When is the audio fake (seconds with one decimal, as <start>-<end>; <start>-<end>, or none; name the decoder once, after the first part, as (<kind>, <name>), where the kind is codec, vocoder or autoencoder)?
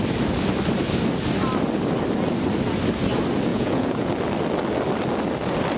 3.5-4.1 (vocoder, Vocos)